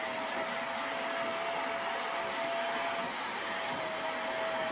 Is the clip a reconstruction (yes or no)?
no